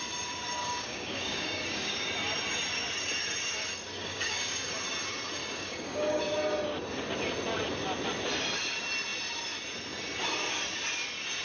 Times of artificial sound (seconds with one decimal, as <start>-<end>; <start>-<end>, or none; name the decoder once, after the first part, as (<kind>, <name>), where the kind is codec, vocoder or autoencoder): 0.6-2.1 (codec, DAC); 4.0-4.7; 5.4-6.2